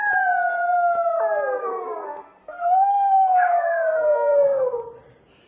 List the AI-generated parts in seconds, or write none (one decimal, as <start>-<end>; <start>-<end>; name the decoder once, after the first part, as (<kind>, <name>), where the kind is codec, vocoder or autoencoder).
1.6-4.8 (codec, SNAC)